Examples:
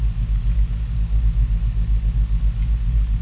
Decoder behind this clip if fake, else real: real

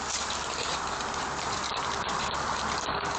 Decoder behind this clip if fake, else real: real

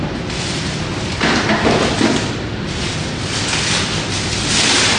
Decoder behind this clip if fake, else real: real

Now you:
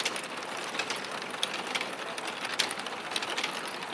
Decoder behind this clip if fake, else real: real